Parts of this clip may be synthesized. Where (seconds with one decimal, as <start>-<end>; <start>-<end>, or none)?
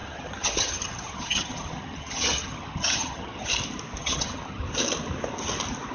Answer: 0.0-3.5; 4.0-4.6